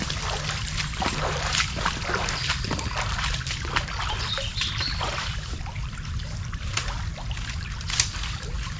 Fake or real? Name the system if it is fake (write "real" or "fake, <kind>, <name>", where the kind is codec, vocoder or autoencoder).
real